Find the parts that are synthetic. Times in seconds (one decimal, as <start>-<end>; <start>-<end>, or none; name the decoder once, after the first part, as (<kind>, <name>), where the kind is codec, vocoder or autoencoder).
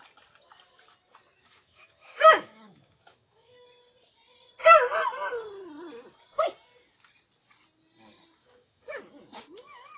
1.4-3.7 (autoencoder, DAC-VAE); 8.4-9.0